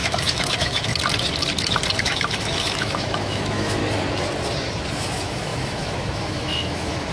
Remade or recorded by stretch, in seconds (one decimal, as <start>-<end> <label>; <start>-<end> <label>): 0.0-0.9 remade; 0.9-2.0 recorded; 2.0-3.8 remade; 3.8-5.0 recorded; 5.0-7.1 remade